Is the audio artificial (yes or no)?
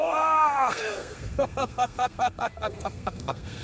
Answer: yes